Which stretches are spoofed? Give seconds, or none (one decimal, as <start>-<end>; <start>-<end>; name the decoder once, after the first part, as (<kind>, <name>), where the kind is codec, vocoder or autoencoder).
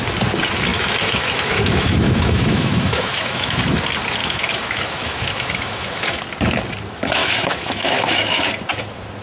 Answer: 0.7-3.6 (autoencoder, DAC-VAE); 4.2-6.2; 7.2-8.5